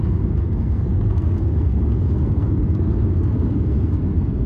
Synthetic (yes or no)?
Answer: yes